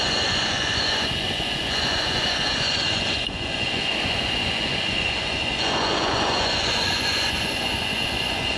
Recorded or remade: remade